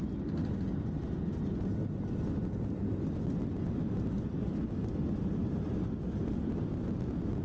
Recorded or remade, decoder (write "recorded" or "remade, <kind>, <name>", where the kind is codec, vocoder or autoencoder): recorded